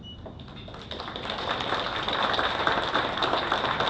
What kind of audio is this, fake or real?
real